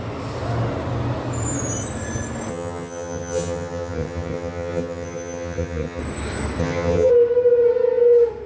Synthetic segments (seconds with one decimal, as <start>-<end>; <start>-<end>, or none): 2.5-6.0; 6.6-7.1

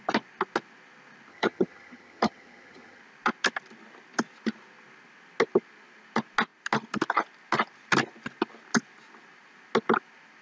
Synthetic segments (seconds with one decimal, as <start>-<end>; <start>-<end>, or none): 1.3-3.0

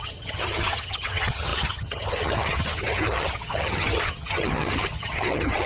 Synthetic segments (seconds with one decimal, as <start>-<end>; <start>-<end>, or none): 0.0-5.7

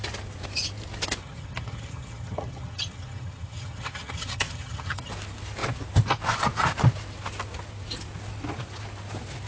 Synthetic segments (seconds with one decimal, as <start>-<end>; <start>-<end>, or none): 1.2-5.1

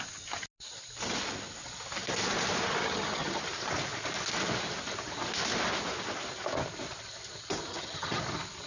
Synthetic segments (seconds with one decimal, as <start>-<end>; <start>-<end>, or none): 2.8-3.4; 7.7-8.2

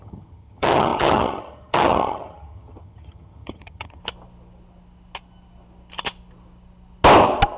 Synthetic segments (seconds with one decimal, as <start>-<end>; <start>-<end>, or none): 0.0-4.0